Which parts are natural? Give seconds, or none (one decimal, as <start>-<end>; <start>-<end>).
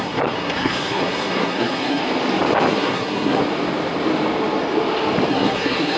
2.0-2.7; 3.4-5.3